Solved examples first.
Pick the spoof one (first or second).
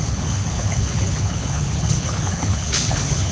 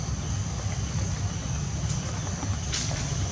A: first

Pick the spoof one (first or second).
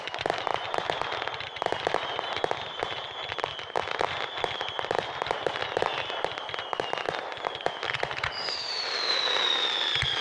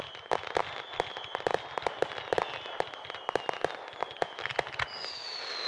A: first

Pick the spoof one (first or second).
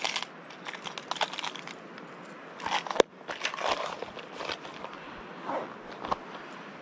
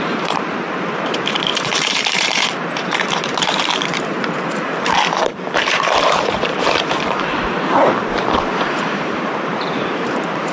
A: second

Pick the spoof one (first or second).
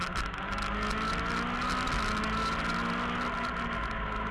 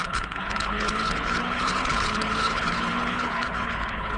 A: second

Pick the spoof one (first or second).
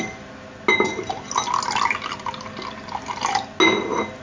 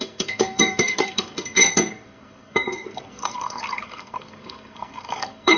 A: second